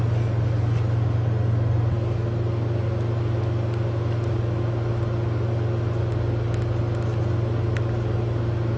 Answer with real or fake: real